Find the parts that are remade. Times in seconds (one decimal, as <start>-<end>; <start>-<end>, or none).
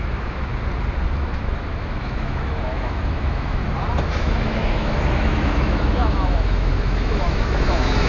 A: 0.0-0.5; 1.1-3.6; 4.2-8.1